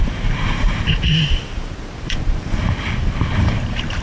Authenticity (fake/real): fake